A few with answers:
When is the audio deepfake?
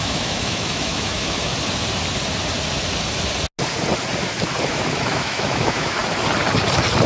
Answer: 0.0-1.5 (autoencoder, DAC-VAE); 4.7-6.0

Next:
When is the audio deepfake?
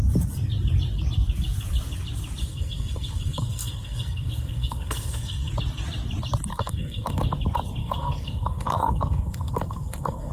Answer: 2.4-5.5 (codec, SNAC); 6.5-7.2; 7.8-10.3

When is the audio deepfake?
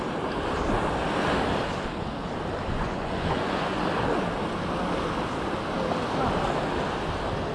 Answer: 2.7-3.8 (vocoder, Vocos)